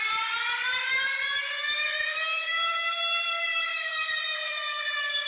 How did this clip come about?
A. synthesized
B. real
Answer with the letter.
B